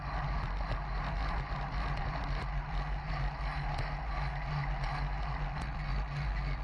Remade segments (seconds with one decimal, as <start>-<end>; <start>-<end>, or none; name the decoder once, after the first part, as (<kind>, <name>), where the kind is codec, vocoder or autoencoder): none